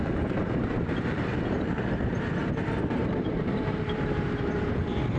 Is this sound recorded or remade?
remade